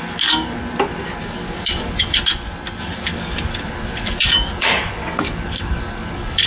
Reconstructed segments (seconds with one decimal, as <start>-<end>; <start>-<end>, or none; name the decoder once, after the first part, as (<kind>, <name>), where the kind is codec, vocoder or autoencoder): 0.0-0.6 (codec, DAC); 1.2-2.3; 2.8-6.5